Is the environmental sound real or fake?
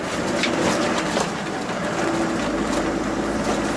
real